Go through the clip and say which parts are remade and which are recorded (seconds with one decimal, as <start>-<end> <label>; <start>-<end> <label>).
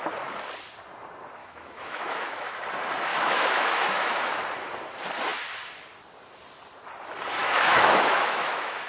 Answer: 0.0-1.4 recorded; 1.4-2.5 remade; 2.5-3.1 recorded; 3.1-4.4 remade; 4.4-7.4 recorded; 7.4-8.9 remade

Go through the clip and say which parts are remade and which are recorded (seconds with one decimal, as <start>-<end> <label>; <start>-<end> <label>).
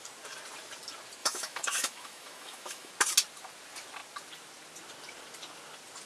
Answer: 0.0-1.2 recorded; 1.2-2.9 remade; 2.9-6.1 recorded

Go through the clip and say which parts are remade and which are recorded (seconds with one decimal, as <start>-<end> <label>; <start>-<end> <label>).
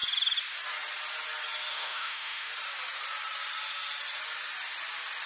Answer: 0.0-1.7 recorded; 1.7-2.5 remade; 2.5-5.3 recorded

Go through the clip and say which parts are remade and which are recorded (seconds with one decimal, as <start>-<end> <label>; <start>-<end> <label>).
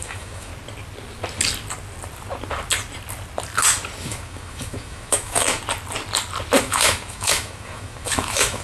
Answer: 0.0-0.5 remade; 0.5-4.0 recorded; 4.0-5.6 remade; 5.6-6.6 recorded; 6.6-8.6 remade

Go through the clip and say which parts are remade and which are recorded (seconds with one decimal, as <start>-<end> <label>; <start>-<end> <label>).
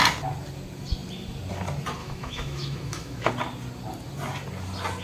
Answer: 0.0-2.0 recorded; 2.0-3.3 remade; 3.3-5.0 recorded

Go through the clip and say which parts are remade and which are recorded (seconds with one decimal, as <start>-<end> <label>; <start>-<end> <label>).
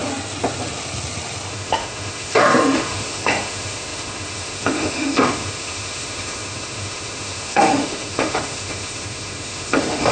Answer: 0.0-1.5 recorded; 1.5-10.1 remade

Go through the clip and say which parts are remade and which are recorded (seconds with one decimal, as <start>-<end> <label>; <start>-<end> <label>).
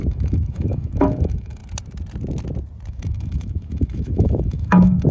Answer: 0.0-1.6 remade; 1.6-2.9 recorded; 2.9-5.1 remade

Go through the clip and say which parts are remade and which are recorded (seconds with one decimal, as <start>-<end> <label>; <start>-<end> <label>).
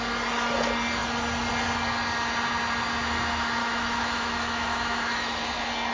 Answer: 0.0-3.6 recorded; 3.6-5.4 remade; 5.4-5.9 recorded